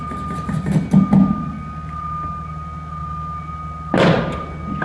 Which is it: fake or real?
real